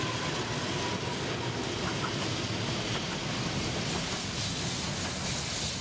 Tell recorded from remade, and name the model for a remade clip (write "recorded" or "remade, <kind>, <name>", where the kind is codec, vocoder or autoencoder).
recorded